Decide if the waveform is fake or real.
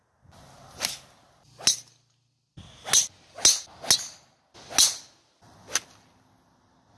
real